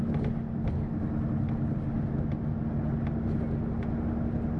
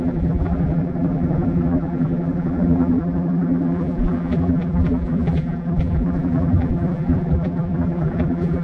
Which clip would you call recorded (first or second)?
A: first